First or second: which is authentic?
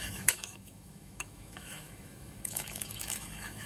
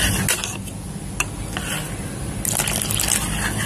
second